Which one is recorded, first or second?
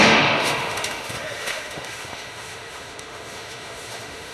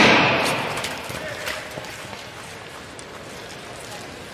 second